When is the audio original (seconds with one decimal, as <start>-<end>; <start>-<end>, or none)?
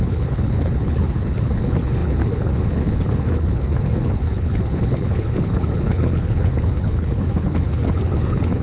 none